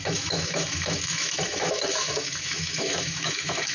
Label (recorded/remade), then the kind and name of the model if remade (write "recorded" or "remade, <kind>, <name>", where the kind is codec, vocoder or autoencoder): remade, autoencoder, DAC-VAE